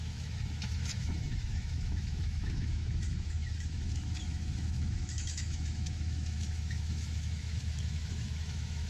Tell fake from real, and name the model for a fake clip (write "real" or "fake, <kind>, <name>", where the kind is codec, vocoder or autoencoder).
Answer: fake, autoencoder, DAC-VAE